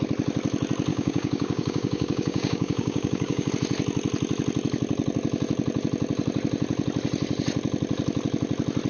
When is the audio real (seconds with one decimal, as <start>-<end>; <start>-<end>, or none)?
0.0-0.9; 3.5-8.9